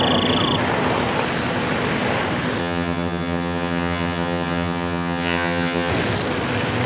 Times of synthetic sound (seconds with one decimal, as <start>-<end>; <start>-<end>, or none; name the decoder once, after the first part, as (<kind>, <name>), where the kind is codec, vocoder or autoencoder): 2.6-5.9 (vocoder, HiFi-GAN)